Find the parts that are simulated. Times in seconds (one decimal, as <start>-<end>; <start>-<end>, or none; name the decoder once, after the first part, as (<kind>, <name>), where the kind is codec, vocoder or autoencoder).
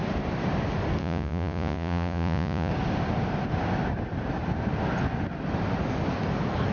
1.0-2.7 (vocoder, Vocos)